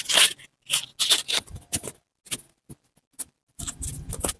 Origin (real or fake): real